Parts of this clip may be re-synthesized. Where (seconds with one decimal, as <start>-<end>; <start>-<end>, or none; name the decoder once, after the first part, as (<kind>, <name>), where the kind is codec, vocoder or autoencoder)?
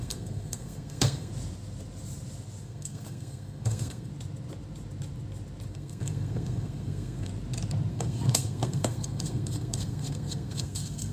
0.0-1.3 (codec, SNAC); 2.6-4.1; 5.7-7.3; 7.9-11.1